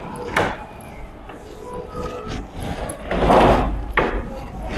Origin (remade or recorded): recorded